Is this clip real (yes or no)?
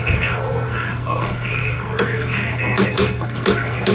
no